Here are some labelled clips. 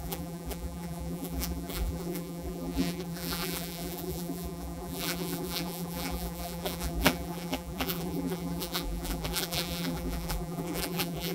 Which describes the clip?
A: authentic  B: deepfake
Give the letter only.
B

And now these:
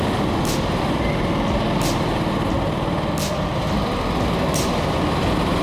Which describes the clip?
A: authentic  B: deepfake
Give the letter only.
A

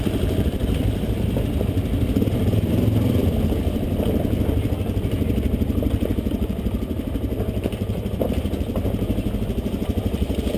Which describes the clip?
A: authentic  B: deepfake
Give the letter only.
B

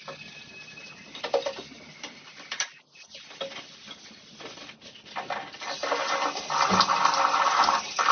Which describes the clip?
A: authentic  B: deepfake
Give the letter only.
A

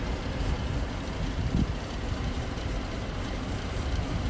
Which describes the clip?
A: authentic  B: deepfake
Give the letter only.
B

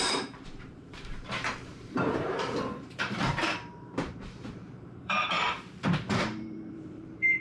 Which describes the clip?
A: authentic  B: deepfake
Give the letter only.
B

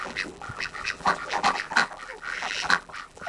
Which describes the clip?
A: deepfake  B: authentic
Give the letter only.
A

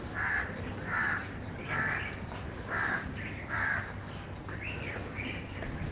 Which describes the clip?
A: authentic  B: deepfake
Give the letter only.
B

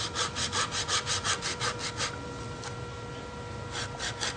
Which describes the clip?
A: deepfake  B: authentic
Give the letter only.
A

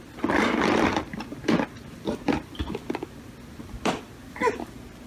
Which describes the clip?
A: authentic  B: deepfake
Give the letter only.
B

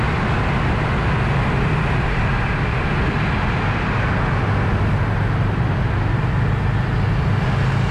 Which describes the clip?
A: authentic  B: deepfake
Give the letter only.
A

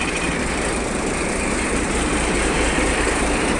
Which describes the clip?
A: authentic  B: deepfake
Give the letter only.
B